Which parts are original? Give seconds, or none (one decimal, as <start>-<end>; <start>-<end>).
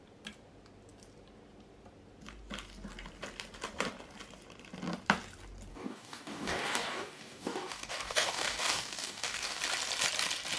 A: 0.0-5.7; 9.6-10.6